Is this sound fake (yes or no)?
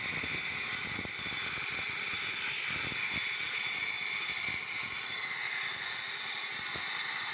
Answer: no